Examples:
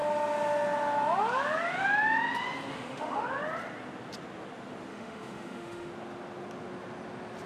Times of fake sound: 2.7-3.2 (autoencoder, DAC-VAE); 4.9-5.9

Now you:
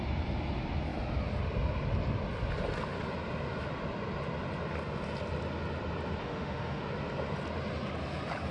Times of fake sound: 6.2-6.8 (autoencoder, DAC-VAE)

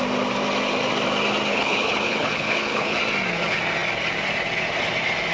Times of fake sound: 1.5-3.0 (codec, HILCodec)

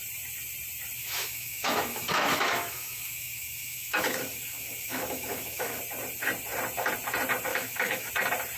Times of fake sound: 1.0-5.8 (autoencoder, DAC-VAE); 7.5-8.1